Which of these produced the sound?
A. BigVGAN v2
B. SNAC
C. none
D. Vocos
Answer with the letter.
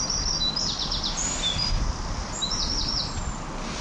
C